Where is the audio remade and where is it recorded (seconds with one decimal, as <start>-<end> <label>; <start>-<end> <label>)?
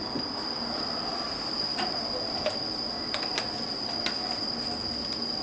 0.0-5.4 recorded